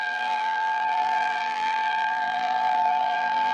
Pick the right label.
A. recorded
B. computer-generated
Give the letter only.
B